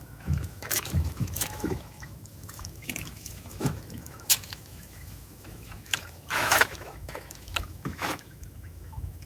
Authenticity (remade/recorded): remade